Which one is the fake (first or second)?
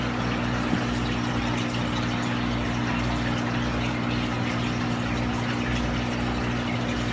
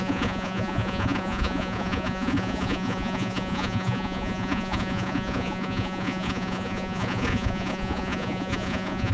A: second